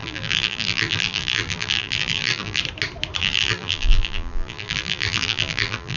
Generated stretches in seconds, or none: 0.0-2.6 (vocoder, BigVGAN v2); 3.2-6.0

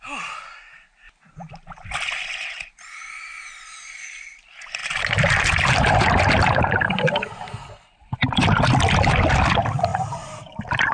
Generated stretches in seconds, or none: 4.8-8.2 (vocoder, BigVGAN v2); 9.9-10.9

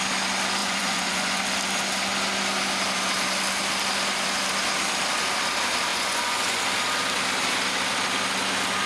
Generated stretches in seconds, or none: 0.6-1.4 (vocoder, Vocos); 5.9-6.6

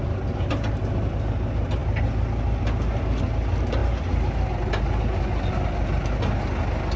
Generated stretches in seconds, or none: none

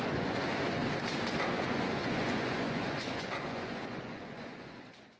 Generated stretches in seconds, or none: 0.0-0.8 (vocoder, Vocos); 1.5-5.2

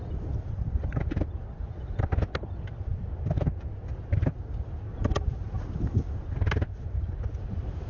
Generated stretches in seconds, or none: none

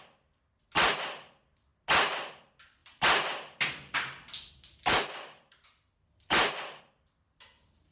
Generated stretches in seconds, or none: none

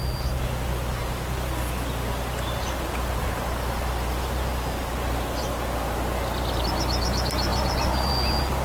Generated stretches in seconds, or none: none